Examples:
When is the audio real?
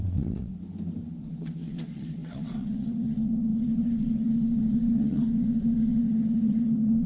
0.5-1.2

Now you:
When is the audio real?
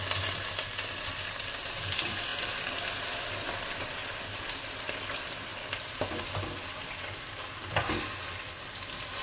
0.0-9.2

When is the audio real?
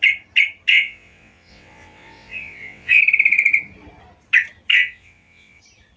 0.0-0.7; 3.0-4.7; 5.6-6.0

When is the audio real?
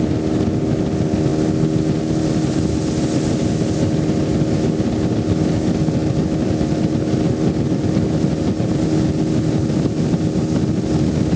0.0-11.4